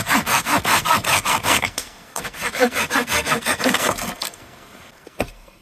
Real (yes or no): no